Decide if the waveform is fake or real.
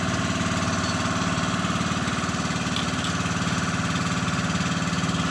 real